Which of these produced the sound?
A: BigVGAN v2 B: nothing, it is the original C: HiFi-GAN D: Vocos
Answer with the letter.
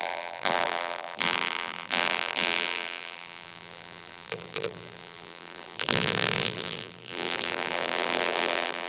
A